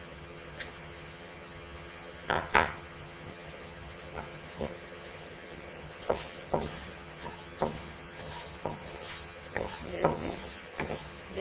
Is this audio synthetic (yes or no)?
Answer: yes